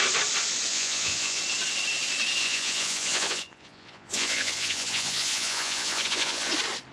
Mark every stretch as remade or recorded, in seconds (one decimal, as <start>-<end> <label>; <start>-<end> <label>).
0.0-0.7 recorded; 0.7-1.4 remade; 1.4-2.4 recorded; 2.4-6.5 remade; 6.5-6.9 recorded